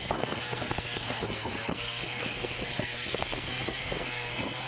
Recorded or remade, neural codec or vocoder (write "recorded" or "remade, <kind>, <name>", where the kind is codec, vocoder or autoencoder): remade, codec, SNAC